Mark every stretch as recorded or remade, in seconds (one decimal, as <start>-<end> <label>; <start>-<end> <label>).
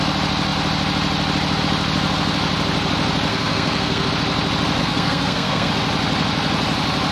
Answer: 0.0-3.3 recorded; 3.3-4.1 remade; 4.1-4.8 recorded; 4.8-5.7 remade; 5.7-7.1 recorded